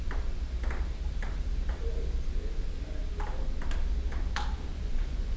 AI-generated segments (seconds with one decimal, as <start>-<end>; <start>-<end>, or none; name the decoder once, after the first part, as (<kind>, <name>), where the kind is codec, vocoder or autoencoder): 4.7-5.4 (vocoder, Vocos)